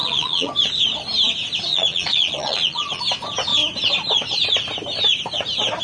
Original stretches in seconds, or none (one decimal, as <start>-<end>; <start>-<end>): 0.5-1.7; 3.0-5.8